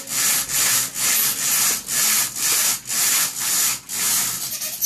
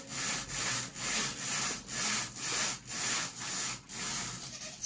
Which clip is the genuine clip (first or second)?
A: first